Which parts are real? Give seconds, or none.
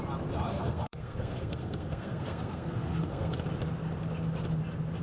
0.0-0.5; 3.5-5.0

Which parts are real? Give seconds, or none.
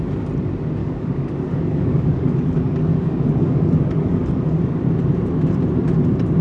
0.0-0.8; 4.6-6.4